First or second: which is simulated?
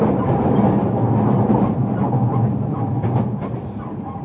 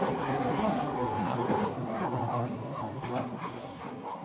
second